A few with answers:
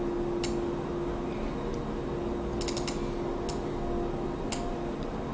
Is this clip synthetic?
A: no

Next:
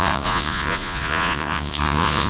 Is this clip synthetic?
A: yes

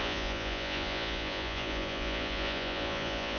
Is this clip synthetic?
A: yes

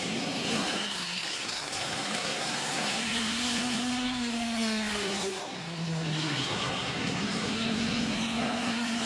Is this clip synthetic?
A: yes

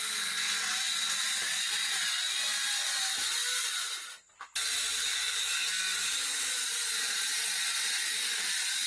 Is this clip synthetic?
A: no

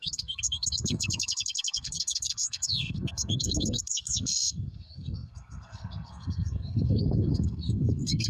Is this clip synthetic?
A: yes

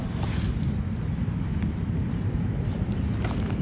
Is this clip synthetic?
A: no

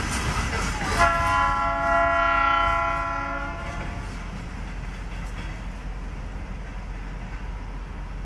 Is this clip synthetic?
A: no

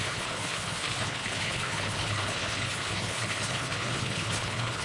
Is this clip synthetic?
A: yes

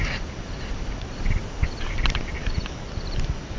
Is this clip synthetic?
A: no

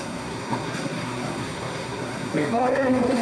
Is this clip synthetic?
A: yes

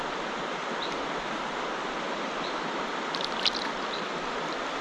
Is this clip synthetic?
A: no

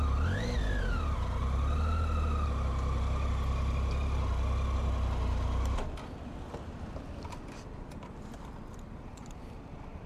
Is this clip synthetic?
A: no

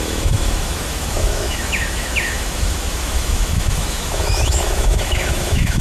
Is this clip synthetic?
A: yes